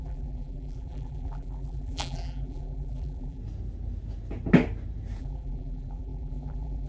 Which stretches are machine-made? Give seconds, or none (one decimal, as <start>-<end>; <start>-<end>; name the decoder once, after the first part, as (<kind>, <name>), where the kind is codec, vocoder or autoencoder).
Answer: 0.0-3.4 (vocoder, BigVGAN v2); 5.2-6.9